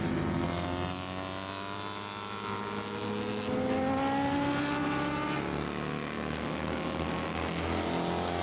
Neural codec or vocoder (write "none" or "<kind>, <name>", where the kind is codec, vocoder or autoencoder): none